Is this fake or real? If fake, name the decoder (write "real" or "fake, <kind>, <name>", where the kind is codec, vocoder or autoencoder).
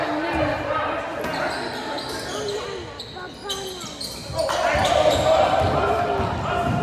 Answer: real